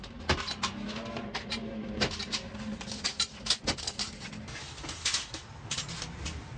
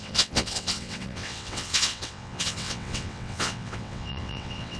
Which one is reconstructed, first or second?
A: second